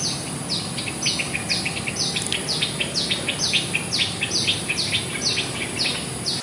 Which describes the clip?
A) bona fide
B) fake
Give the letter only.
A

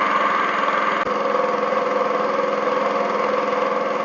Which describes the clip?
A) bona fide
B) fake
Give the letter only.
A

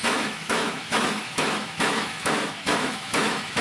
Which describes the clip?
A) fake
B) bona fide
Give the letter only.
A